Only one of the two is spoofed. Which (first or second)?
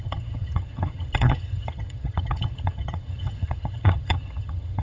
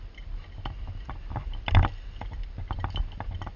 first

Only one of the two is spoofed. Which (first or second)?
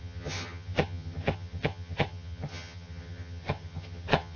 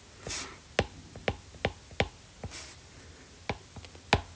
first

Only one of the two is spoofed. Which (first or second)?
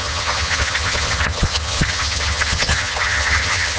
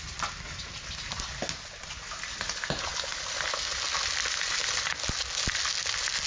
first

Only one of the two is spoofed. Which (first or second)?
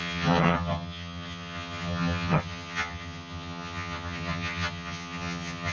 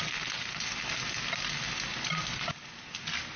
first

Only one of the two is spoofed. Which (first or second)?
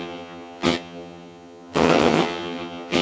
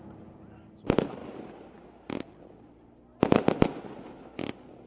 first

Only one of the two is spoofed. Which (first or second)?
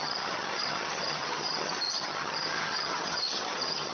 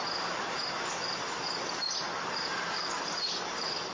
first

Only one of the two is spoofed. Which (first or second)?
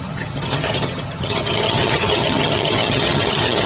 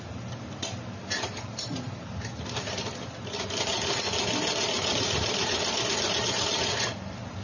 first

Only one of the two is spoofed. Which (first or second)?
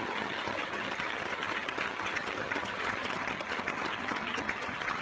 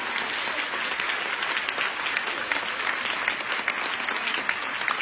first